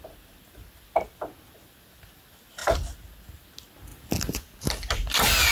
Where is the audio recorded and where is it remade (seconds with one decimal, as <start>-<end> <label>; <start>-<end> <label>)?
0.0-5.5 recorded